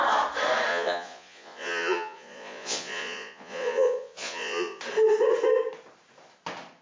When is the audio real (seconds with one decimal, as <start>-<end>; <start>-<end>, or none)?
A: 0.0-0.7; 4.8-6.8